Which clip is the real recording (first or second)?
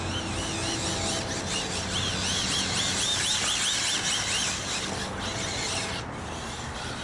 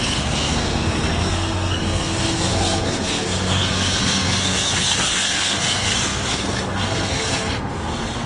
first